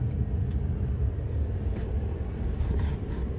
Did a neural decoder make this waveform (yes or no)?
no